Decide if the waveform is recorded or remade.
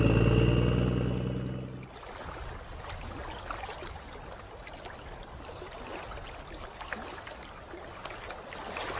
recorded